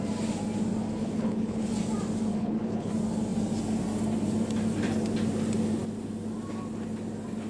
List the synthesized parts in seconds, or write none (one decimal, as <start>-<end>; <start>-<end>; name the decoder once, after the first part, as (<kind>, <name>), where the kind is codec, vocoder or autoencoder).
1.0-1.7 (codec, HILCodec); 2.3-2.9